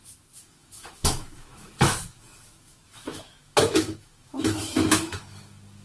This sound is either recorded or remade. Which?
remade